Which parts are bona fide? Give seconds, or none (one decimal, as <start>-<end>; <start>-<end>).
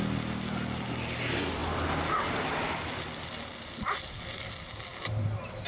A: 0.0-4.9